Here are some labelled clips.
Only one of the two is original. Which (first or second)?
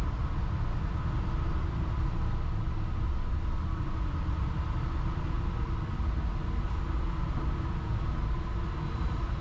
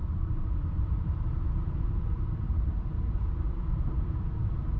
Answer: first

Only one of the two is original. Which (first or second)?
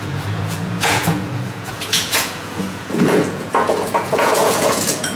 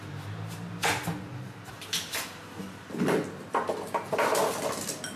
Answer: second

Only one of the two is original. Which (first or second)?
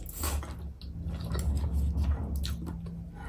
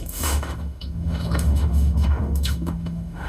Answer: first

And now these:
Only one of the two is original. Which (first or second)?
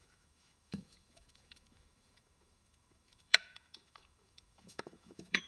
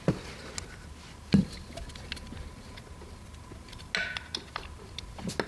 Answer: second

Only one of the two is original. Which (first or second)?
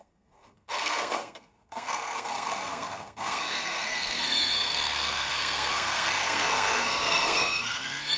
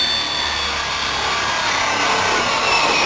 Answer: second